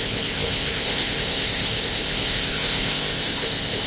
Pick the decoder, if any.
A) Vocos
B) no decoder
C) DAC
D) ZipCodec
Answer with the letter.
D